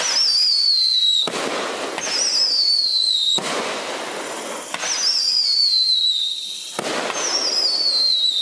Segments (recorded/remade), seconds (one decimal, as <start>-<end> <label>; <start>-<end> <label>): 0.0-2.9 recorded; 2.9-3.8 remade; 3.8-8.4 recorded